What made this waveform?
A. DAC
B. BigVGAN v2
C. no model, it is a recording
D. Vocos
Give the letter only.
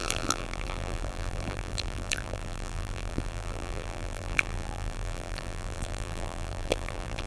B